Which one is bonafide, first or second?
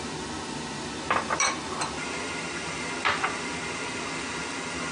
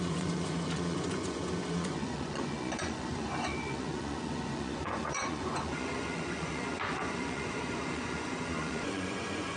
first